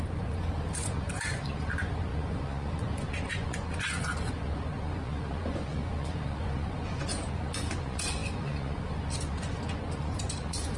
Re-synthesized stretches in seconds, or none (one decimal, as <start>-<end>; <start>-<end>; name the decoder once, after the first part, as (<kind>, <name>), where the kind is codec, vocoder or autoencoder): 0.0-10.8 (vocoder, Vocos)

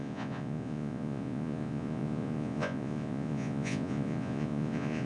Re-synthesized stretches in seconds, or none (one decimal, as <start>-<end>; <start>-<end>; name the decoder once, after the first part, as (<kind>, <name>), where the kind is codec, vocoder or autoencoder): 0.0-5.1 (vocoder, Vocos)

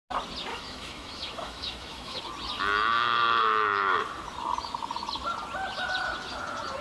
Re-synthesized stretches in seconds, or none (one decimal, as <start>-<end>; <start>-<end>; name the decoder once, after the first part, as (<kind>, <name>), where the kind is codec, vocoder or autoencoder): 0.5-2.2 (autoencoder, DAC-VAE); 2.9-4.0